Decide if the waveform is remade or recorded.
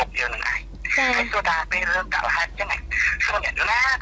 recorded